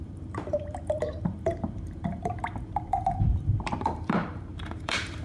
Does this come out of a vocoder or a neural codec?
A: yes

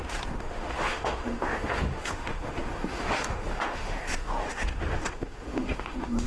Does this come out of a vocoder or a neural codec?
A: yes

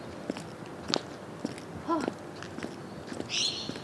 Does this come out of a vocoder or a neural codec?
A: no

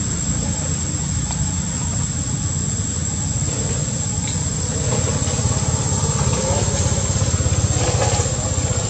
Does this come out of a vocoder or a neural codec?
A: no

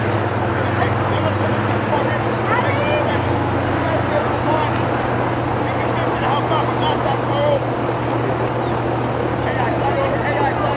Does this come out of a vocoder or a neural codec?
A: no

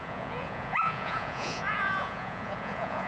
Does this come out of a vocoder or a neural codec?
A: yes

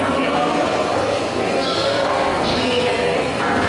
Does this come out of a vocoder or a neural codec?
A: yes